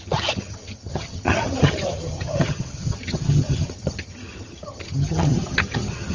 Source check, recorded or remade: remade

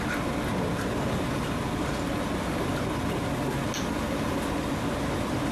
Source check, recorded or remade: recorded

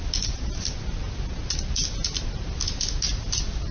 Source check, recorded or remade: recorded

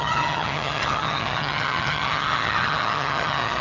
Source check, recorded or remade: remade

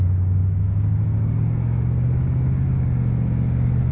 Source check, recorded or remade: remade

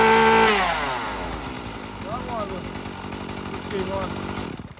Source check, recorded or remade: recorded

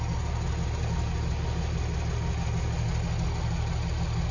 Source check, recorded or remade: recorded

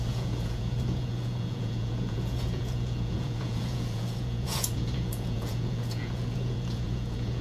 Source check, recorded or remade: remade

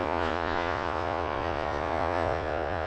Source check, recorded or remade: remade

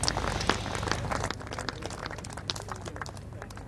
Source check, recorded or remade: recorded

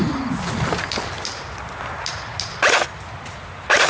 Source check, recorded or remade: recorded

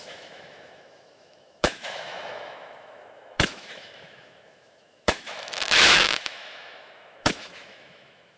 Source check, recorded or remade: remade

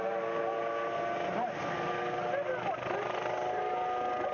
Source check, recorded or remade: recorded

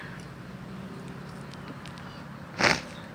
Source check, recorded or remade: recorded